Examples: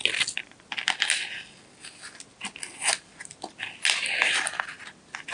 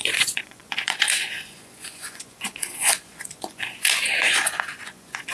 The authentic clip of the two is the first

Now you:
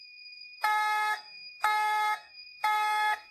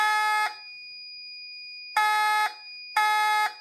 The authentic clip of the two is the second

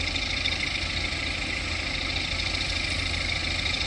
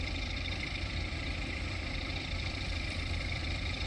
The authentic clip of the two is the first